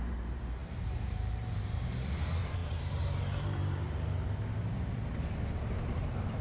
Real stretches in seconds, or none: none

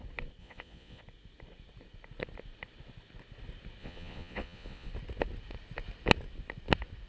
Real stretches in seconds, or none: 0.0-0.4; 1.0-3.8; 4.9-7.1

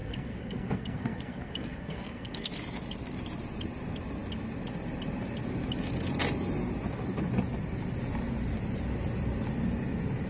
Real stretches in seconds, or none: 2.5-10.3

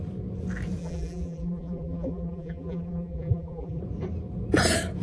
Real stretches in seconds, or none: 0.0-0.8; 3.8-5.0

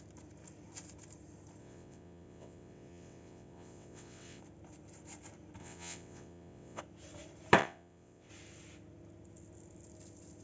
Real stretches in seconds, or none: 0.0-1.6; 4.4-5.6; 6.8-7.6; 8.3-10.4